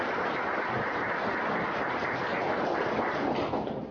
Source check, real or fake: real